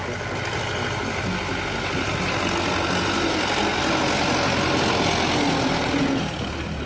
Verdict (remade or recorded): recorded